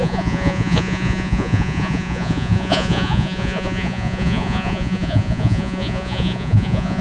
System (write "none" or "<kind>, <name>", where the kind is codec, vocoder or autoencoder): vocoder, Vocos